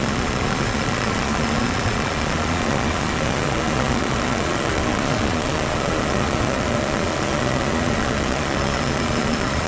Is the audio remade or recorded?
remade